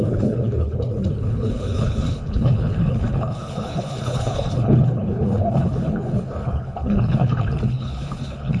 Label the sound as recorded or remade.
remade